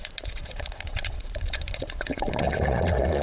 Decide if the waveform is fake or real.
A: fake